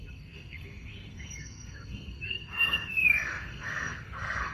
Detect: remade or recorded remade